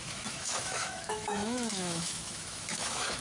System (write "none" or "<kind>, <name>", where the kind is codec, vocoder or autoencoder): autoencoder, DAC-VAE